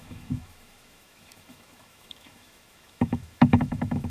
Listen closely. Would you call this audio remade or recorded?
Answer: remade